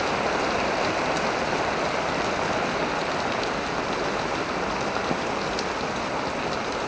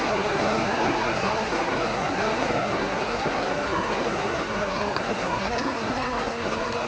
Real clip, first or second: first